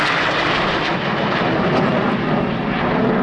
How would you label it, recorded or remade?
recorded